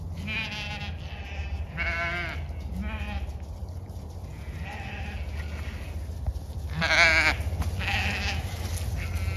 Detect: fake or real real